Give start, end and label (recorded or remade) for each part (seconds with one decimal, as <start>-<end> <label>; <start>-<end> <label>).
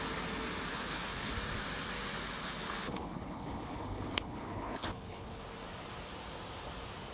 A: 0.0-0.7 recorded; 0.7-1.3 remade; 1.3-2.4 recorded; 2.4-5.4 remade; 5.4-7.1 recorded